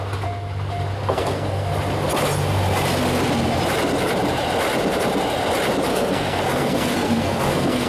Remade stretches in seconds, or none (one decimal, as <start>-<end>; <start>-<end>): 1.0-1.7; 5.9-7.9